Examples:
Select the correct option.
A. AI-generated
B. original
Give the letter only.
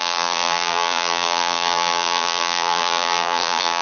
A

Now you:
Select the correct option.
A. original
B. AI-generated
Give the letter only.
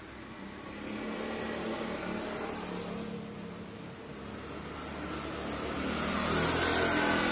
A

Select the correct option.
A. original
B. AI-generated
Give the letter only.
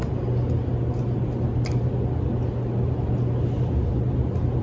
A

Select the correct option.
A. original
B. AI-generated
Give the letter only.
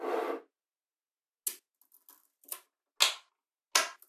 A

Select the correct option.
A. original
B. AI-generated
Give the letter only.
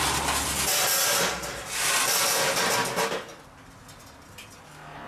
A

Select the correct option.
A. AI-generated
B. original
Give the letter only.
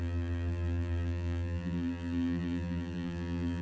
A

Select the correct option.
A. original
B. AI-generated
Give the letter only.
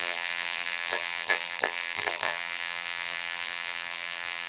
B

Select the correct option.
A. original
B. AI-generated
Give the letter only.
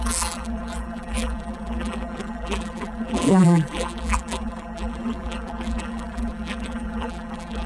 B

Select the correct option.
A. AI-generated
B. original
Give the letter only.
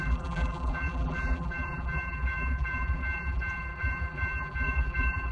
A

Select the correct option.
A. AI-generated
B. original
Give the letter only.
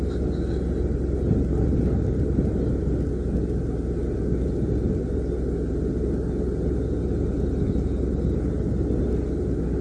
B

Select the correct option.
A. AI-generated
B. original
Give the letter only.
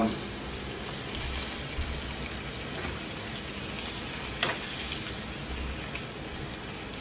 B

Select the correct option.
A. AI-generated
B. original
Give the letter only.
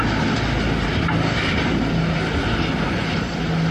B